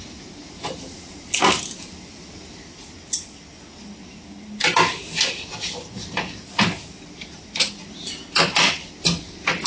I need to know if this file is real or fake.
real